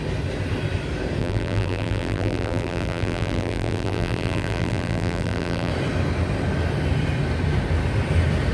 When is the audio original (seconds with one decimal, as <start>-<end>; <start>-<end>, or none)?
0.0-1.2; 5.7-8.5